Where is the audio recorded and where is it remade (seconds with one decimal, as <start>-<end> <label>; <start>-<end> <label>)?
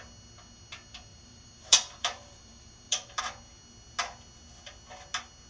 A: 0.0-1.1 recorded; 1.1-3.2 remade; 3.2-5.5 recorded